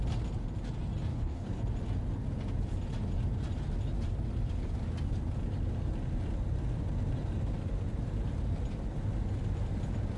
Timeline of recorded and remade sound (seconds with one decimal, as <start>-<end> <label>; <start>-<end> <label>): 0.0-1.1 recorded; 1.1-1.6 remade; 1.6-10.2 recorded